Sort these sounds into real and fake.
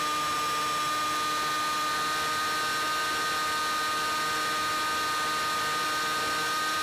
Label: real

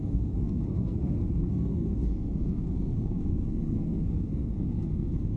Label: fake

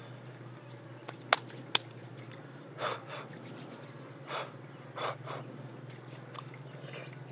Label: real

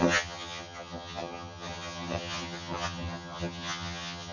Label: fake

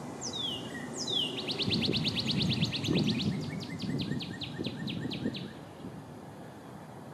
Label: real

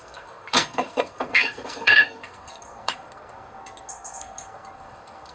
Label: fake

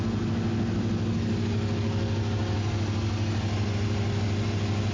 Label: real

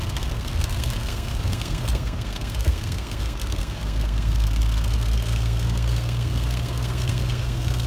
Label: fake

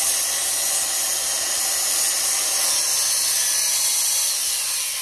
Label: real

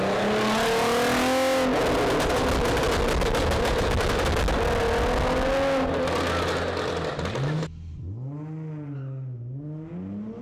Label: real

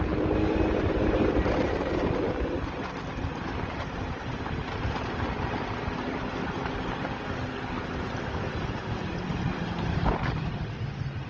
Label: real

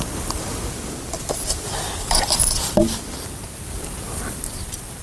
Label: fake